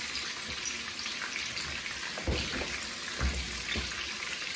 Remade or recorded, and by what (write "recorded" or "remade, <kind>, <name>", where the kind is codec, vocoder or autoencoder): recorded